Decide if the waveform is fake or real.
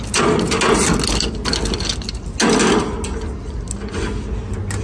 real